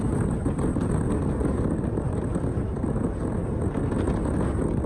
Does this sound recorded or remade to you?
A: recorded